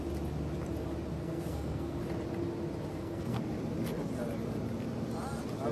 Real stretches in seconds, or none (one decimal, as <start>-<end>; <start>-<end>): 0.0-1.2; 2.0-2.9; 3.4-5.7